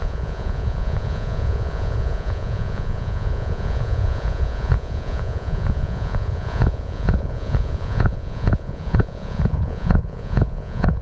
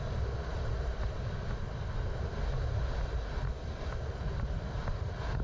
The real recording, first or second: second